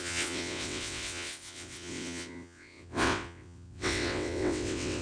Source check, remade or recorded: remade